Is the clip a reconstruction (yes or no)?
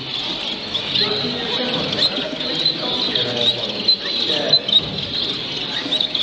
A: no